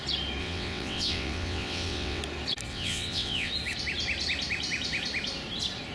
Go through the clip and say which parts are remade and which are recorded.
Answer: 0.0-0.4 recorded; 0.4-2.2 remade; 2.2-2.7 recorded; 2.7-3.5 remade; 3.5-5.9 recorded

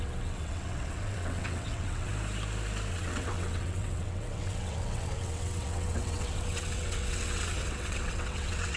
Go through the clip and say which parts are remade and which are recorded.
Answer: 0.0-2.1 remade; 2.1-2.9 recorded; 2.9-8.8 remade

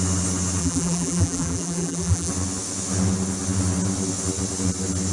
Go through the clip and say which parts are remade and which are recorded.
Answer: 0.0-0.6 recorded; 0.6-2.3 remade; 2.3-5.1 recorded

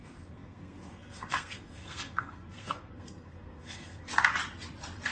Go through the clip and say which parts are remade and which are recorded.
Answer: 0.0-4.1 remade; 4.1-5.1 recorded